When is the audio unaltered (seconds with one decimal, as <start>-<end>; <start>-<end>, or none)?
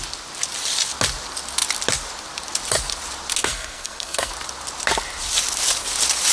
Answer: 0.0-3.4; 4.3-6.3